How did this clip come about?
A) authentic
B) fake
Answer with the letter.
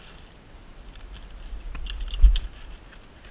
A